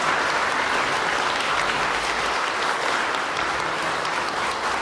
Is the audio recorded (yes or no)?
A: yes